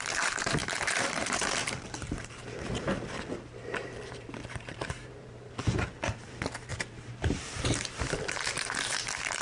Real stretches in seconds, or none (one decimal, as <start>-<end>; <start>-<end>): none